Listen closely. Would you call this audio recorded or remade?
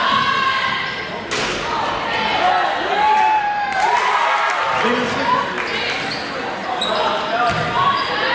recorded